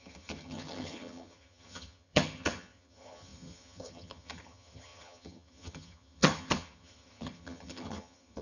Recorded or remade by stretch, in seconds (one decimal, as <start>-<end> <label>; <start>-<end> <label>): 0.0-8.4 remade